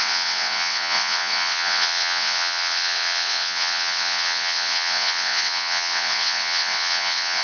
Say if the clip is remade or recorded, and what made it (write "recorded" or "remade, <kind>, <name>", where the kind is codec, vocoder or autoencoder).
remade, vocoder, WaveNeXt